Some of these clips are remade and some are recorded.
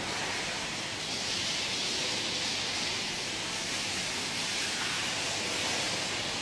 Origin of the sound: recorded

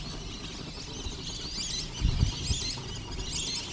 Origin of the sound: recorded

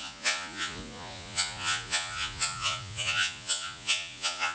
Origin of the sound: remade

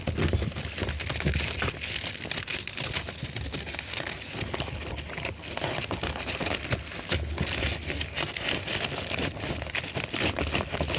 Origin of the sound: recorded